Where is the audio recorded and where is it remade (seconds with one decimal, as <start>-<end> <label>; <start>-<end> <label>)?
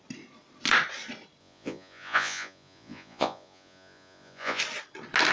0.0-1.4 recorded; 1.4-4.6 remade; 4.6-5.3 recorded